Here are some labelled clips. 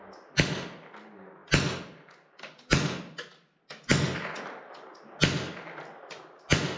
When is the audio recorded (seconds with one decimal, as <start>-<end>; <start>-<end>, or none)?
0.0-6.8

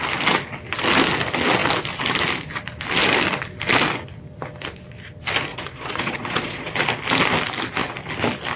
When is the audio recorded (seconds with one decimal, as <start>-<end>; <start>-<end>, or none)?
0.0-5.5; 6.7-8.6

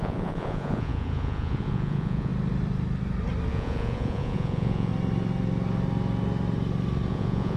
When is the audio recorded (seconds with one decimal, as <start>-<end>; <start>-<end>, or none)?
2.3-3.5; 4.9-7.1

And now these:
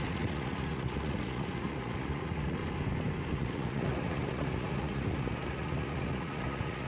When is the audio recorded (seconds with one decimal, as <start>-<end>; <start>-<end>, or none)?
2.6-3.3

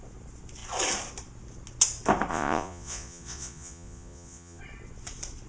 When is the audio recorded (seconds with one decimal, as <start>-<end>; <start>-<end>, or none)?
0.0-2.3; 4.6-5.5

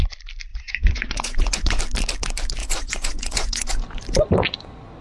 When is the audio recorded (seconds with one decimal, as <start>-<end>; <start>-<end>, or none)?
0.0-0.5; 1.8-2.6; 3.7-5.0

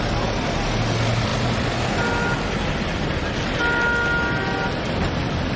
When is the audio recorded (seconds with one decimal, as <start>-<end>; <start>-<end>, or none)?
0.0-5.6

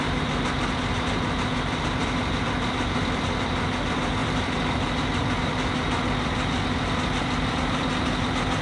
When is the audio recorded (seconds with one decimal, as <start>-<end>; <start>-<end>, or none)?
0.0-8.6